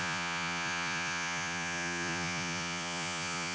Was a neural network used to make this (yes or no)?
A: yes